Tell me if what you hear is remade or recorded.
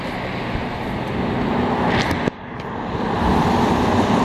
recorded